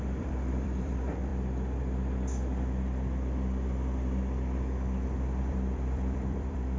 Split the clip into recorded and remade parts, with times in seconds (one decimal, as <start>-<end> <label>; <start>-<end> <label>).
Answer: 0.0-1.3 remade; 1.3-5.4 recorded; 5.4-6.8 remade